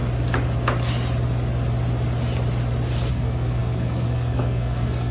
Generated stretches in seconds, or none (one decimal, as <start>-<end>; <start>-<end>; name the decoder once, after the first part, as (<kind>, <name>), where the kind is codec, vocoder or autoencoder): 3.1-5.1 (codec, SNAC)